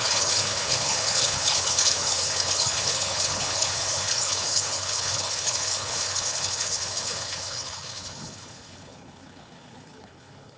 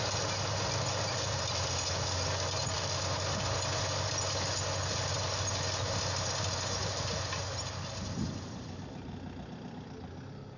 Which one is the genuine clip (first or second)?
second